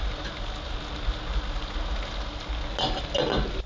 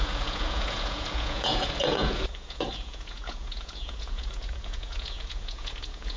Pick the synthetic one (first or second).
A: second